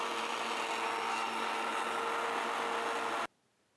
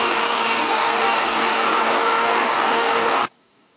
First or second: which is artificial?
second